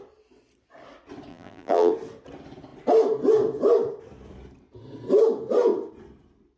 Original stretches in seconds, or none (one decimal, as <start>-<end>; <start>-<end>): 0.0-1.3; 1.9-6.6